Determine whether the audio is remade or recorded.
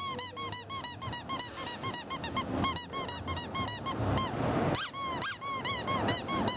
recorded